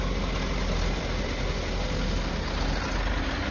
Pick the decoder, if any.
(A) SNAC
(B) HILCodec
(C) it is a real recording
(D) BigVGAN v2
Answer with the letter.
C